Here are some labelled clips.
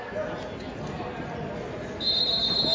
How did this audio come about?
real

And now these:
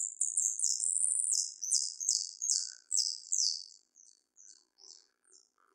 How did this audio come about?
fake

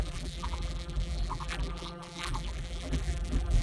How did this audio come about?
fake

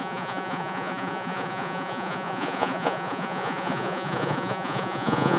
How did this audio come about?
fake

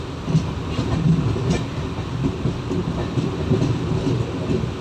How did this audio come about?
real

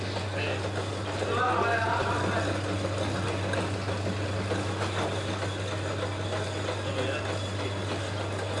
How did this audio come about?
real